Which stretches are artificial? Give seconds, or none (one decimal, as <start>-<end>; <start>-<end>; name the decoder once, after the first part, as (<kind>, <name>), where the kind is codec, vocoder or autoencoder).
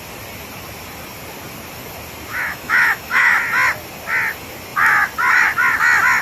2.3-3.4 (autoencoder, DAC-VAE)